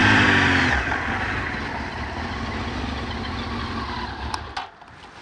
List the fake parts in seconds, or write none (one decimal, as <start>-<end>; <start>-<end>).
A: none